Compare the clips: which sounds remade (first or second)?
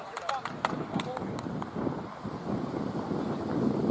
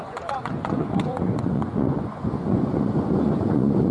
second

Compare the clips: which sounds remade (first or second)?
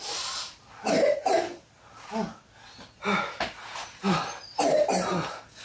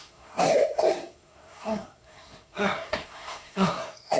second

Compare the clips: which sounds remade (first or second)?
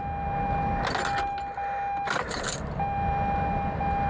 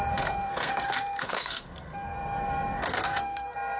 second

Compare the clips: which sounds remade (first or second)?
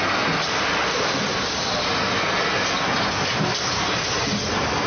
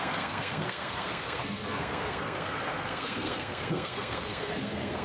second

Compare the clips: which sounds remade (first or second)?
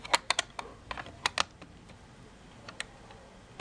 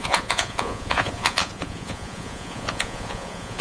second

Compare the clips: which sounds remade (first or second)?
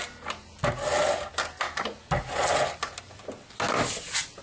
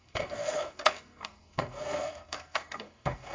second